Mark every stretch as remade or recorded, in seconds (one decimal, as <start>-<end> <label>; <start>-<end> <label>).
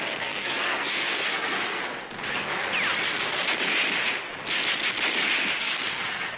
0.0-1.8 remade; 1.8-5.6 recorded; 5.6-6.4 remade